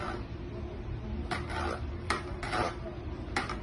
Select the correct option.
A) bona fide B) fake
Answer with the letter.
A